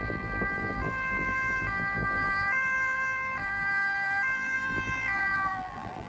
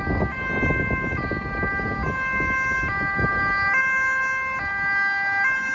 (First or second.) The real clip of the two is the second